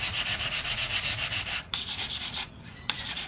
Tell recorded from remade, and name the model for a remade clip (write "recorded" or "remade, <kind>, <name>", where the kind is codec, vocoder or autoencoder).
remade, vocoder, Vocos